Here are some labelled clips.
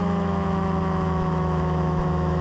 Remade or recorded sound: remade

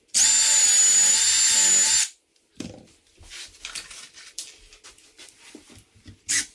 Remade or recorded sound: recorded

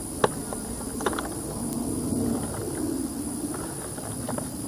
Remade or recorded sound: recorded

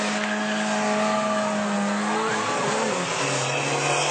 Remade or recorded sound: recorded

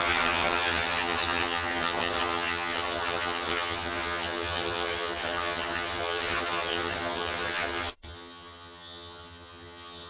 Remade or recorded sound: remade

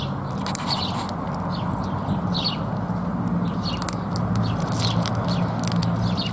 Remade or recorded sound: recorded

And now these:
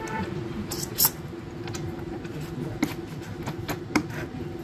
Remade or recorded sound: recorded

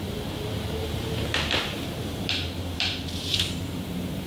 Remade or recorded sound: remade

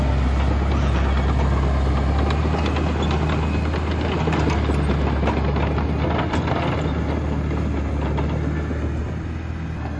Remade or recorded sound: recorded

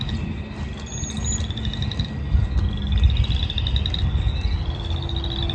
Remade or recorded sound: recorded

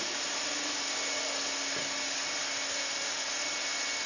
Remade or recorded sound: recorded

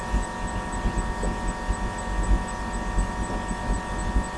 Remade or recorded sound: recorded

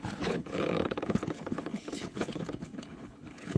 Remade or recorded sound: remade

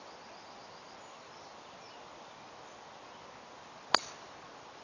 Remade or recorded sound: recorded